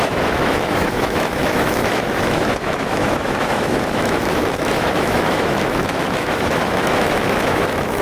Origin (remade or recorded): remade